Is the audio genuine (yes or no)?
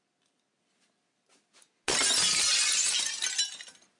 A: yes